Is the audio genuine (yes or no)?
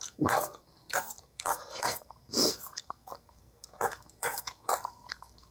no